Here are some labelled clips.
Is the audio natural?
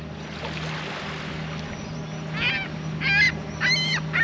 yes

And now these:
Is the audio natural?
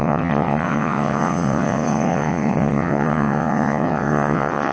no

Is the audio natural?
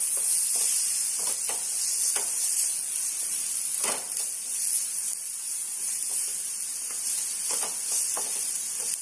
yes